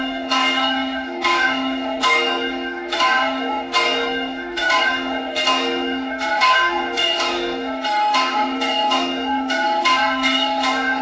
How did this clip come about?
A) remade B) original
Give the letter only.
A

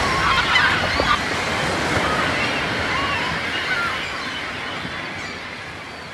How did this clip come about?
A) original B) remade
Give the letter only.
A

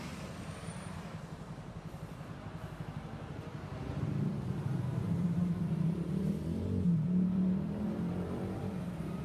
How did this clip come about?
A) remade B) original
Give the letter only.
A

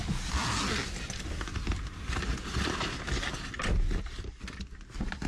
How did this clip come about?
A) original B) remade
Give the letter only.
A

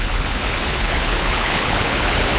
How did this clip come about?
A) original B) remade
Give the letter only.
B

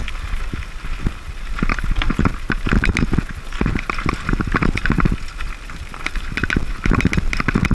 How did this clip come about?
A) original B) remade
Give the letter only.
A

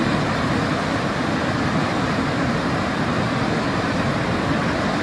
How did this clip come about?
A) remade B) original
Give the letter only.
B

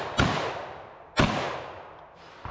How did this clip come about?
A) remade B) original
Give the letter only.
B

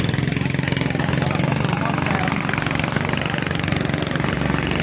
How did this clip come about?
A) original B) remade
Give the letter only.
A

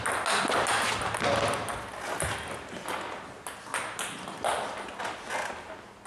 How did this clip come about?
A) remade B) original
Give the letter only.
B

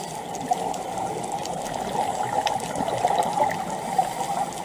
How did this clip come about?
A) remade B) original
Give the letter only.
B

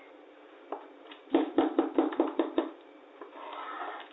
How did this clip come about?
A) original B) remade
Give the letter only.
A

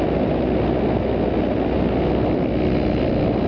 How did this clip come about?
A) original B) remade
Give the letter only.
A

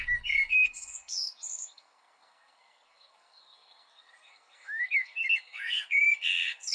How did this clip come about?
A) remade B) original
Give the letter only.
A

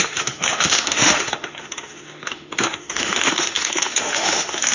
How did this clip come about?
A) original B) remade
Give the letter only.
B